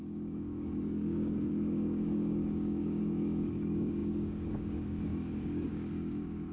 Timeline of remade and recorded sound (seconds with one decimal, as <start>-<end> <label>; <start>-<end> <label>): 0.0-6.5 remade